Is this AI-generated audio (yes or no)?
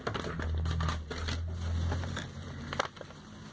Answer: no